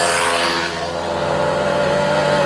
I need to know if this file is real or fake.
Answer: real